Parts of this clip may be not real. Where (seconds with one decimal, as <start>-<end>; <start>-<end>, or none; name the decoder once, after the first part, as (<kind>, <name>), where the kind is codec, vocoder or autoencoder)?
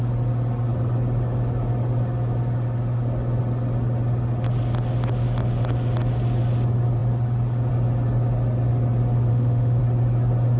9.3-9.8 (autoencoder, DAC-VAE)